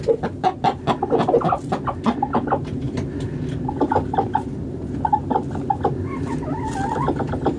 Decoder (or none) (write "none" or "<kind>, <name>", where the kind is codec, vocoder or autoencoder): none